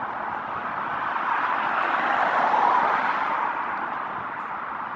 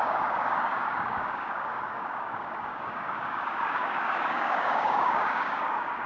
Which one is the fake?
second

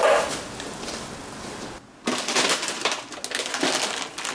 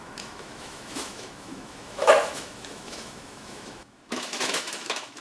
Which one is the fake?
second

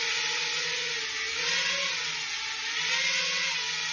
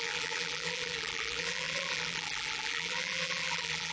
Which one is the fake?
second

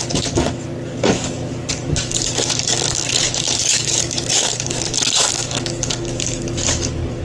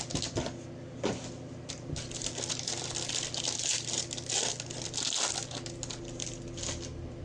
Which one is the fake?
first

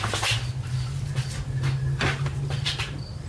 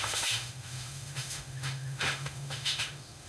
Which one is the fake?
second